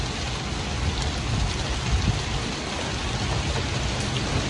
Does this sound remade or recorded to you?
recorded